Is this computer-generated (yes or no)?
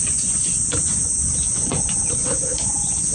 yes